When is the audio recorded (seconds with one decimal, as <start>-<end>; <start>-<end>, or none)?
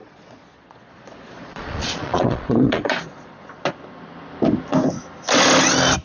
3.6-6.0